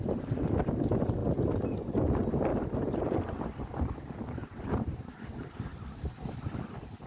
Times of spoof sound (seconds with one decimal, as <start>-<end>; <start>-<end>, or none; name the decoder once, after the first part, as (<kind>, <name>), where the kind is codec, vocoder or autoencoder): 1.2-1.8 (vocoder, BigVGAN v2); 5.7-6.6